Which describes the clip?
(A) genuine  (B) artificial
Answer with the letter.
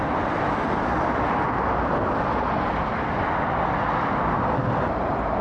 A